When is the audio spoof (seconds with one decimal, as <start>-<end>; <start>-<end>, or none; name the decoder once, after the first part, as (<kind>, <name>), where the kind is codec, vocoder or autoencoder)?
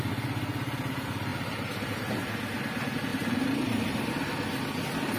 3.1-4.1 (vocoder, BigVGAN v2)